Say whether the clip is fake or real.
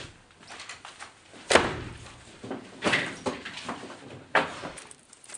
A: fake